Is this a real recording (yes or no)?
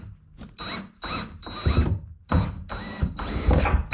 yes